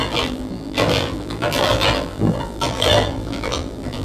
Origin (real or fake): fake